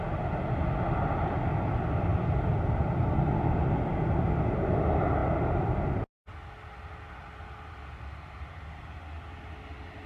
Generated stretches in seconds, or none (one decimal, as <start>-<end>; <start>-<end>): none

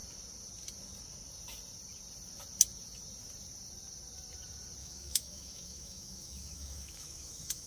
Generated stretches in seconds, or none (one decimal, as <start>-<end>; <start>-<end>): 4.8-7.7

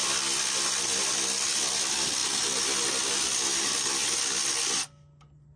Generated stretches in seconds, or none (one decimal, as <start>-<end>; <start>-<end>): none

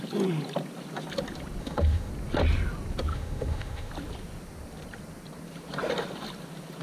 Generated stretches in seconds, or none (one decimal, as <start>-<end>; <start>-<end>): 1.6-2.1; 3.1-3.9